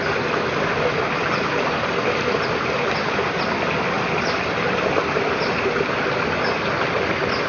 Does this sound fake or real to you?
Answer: real